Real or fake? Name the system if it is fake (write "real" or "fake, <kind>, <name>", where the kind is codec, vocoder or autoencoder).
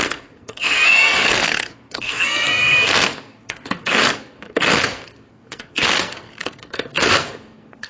fake, codec, SNAC